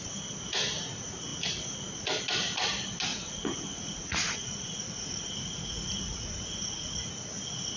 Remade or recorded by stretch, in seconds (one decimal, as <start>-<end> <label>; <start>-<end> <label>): 0.0-3.1 recorded; 3.1-7.1 remade; 7.1-7.8 recorded